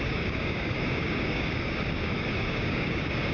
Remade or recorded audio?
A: remade